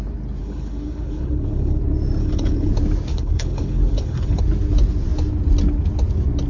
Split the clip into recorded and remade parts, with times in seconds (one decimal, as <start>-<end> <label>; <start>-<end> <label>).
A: 0.0-0.4 recorded; 0.4-1.8 remade; 1.8-2.2 recorded; 2.2-2.7 remade; 2.7-3.1 recorded; 3.1-4.4 remade; 4.4-6.5 recorded